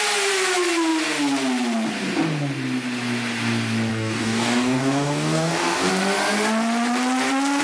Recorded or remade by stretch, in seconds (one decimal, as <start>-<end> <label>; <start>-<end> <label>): 0.0-3.9 recorded; 3.9-5.9 remade; 5.9-7.6 recorded